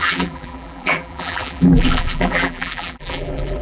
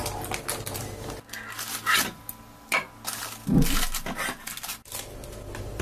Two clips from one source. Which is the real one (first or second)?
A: second